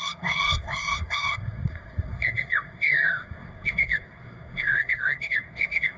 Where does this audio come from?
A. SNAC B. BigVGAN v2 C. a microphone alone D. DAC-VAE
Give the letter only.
A